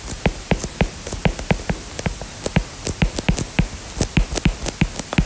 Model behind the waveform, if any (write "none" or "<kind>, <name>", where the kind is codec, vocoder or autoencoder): none